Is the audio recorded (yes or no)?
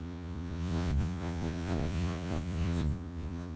no